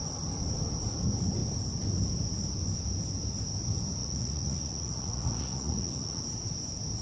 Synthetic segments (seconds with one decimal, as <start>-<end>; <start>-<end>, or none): 4.0-6.2